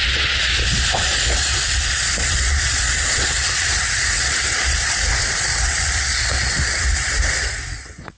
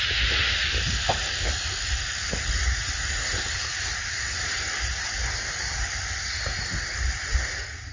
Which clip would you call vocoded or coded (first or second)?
first